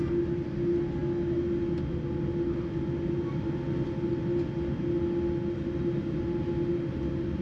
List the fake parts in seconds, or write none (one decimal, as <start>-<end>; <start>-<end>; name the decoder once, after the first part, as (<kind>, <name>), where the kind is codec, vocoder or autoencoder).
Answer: none